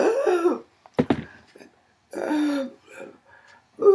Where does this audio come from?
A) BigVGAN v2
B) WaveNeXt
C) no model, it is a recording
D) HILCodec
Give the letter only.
C